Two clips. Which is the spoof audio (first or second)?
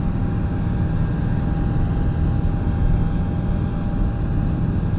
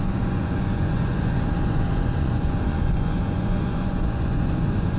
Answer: second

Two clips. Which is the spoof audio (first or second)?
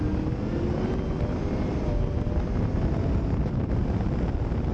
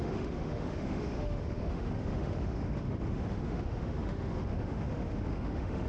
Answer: second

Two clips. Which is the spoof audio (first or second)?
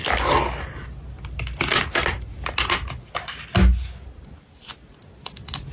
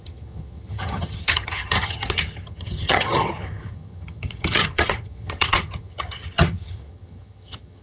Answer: second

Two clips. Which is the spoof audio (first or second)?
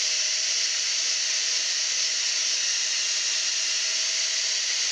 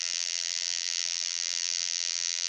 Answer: second